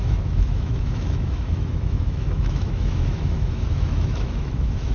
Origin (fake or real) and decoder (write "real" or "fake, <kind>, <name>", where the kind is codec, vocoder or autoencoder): fake, autoencoder, DAC-VAE